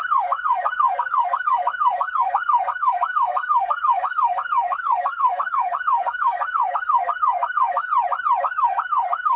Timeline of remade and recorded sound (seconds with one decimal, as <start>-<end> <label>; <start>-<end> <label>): 0.0-7.9 remade; 7.9-8.4 recorded; 8.4-9.4 remade

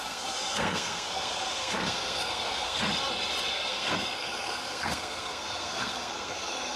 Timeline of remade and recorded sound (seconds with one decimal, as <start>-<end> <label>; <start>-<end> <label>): 0.0-2.8 remade; 2.8-3.5 recorded; 3.5-6.8 remade